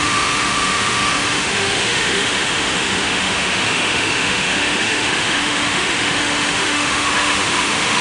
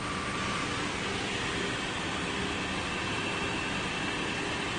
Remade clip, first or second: first